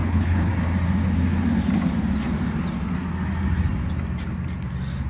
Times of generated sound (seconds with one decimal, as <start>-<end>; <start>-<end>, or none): 0.0-0.5